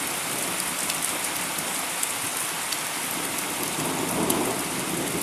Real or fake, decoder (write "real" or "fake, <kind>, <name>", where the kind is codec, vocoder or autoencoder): real